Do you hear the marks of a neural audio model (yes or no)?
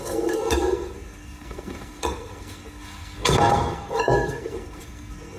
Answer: yes